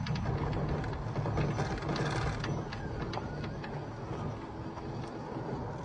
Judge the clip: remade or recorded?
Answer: recorded